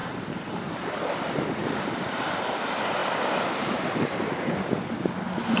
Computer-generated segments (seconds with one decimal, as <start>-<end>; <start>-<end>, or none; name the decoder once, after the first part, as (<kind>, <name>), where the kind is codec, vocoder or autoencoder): 0.0-1.0 (vocoder, BigVGAN v2)